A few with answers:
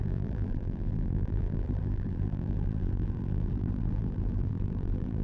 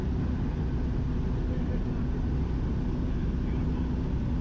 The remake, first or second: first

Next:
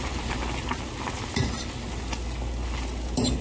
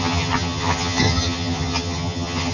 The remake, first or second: second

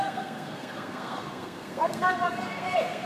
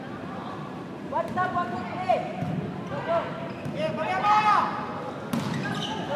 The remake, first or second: first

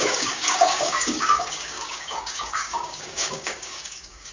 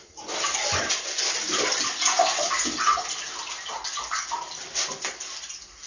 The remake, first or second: first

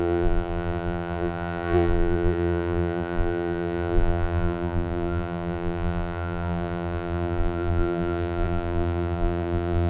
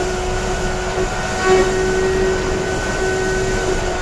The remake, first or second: first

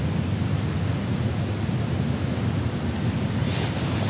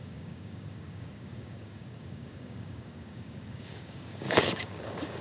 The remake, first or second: second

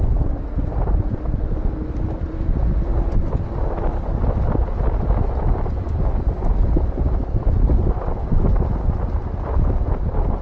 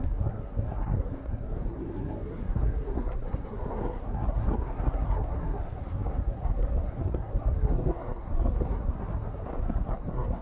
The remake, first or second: second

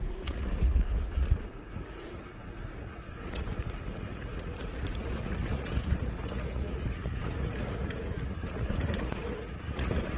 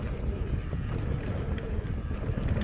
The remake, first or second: first